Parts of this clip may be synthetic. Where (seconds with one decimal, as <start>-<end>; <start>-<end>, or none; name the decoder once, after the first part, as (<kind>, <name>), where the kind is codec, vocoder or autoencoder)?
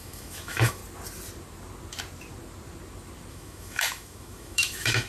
0.0-0.8 (autoencoder, DAC-VAE); 3.3-5.1